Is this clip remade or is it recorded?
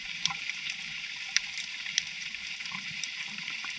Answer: remade